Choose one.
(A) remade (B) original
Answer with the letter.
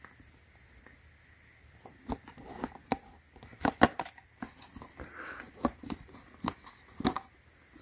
B